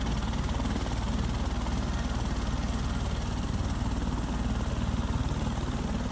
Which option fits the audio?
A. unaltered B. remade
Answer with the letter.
A